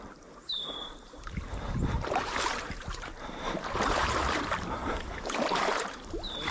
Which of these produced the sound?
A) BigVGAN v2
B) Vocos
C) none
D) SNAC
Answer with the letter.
A